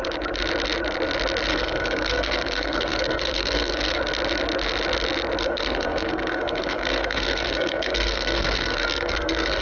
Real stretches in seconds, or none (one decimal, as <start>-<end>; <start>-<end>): 0.0-1.5; 4.0-5.4

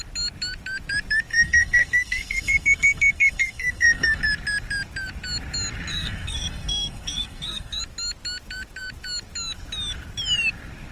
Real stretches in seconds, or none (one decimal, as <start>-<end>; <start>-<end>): 0.0-1.3; 4.2-5.9; 7.8-10.9

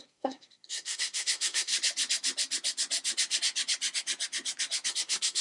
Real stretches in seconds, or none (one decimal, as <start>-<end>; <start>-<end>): 1.7-4.9

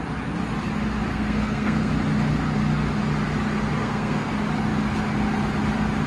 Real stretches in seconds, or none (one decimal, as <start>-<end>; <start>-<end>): 0.0-1.1; 1.9-3.8; 4.3-6.1

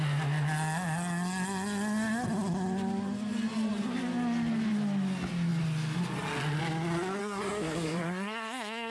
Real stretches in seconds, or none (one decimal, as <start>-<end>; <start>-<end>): 0.0-7.2

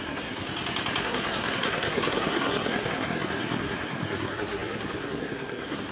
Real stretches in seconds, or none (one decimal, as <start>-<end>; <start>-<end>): 0.4-1.0

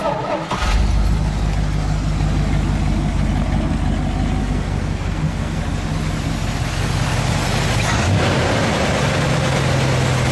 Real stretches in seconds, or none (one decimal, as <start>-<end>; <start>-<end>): 0.0-4.4; 5.6-10.3